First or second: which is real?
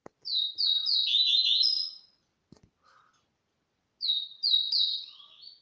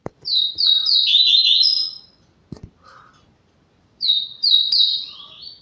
first